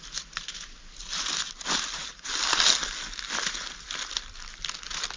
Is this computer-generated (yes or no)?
no